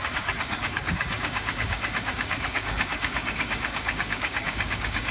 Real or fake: fake